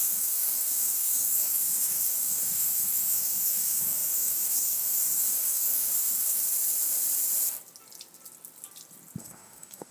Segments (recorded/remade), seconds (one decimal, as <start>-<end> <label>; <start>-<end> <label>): 0.0-6.4 remade; 6.4-9.2 recorded; 9.2-9.9 remade